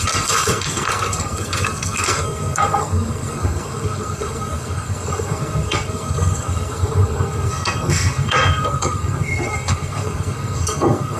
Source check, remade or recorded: remade